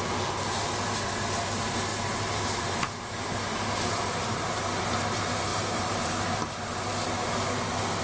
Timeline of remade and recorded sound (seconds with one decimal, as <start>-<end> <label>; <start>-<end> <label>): 0.0-1.9 recorded; 1.9-4.8 remade; 4.8-5.5 recorded; 5.5-6.8 remade; 6.8-8.0 recorded